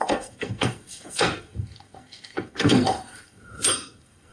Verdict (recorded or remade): remade